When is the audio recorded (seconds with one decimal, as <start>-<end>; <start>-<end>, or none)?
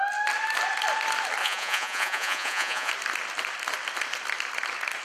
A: 0.0-1.4; 2.9-5.0